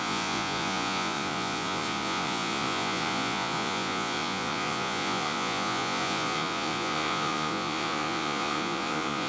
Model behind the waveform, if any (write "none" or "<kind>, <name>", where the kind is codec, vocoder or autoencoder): vocoder, Vocos